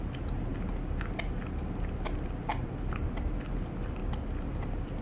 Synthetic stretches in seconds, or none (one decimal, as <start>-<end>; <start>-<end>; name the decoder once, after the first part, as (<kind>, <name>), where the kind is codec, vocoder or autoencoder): none